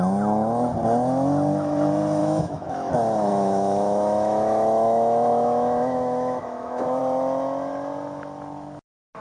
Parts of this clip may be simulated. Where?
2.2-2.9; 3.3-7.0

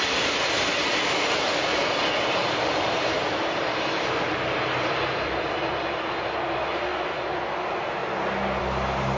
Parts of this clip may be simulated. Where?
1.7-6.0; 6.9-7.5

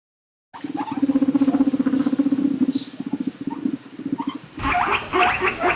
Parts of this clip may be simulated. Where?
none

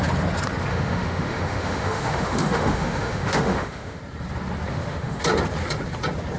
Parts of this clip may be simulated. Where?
0.7-4.0; 4.7-5.2